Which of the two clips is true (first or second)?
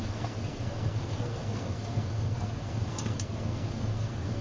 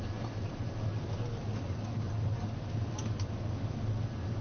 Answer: second